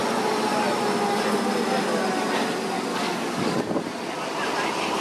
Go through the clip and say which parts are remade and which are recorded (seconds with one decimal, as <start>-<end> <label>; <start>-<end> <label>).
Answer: 0.0-2.9 recorded; 2.9-3.6 remade; 3.6-5.0 recorded